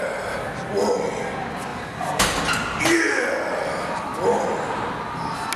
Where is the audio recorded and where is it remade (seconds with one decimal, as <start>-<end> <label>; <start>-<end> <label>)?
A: 0.0-5.6 recorded